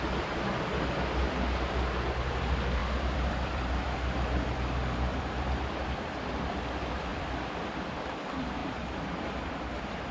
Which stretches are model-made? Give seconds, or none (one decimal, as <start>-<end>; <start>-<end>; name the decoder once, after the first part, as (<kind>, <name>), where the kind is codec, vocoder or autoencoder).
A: 2.8-6.6 (vocoder, BigVGAN v2); 7.1-7.9; 8.6-9.6